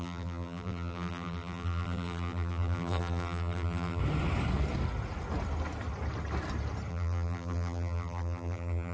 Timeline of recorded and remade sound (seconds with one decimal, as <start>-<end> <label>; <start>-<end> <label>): 0.0-4.0 remade; 4.0-6.9 recorded; 6.9-8.9 remade